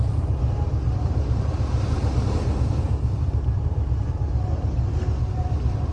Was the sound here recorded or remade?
recorded